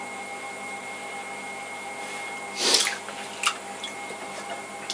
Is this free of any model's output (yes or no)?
no